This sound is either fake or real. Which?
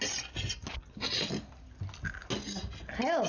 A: real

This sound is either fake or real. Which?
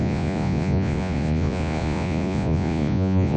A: fake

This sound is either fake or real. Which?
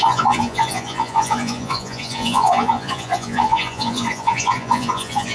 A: fake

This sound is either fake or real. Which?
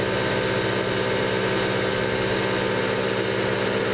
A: real